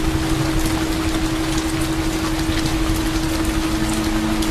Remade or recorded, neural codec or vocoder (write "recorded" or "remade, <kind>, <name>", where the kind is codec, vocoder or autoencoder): recorded